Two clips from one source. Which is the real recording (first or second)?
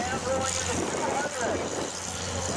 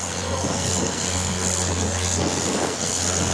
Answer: first